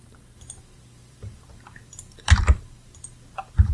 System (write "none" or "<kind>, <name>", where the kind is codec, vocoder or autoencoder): vocoder, BigVGAN v2